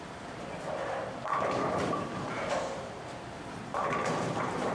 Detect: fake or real fake